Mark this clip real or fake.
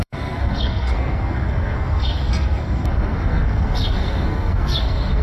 fake